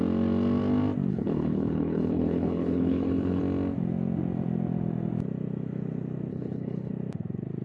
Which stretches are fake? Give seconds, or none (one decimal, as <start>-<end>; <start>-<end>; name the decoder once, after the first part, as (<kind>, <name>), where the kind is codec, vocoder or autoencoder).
1.1-3.4 (codec, HILCodec); 6.3-6.9